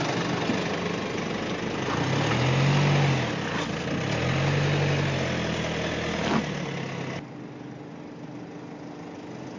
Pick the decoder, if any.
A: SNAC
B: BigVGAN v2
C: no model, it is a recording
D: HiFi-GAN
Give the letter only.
C